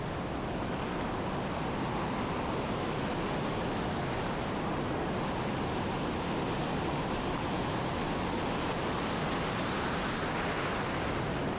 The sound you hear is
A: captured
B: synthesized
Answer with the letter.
A